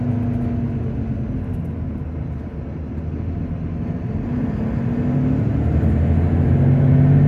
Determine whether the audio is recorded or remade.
recorded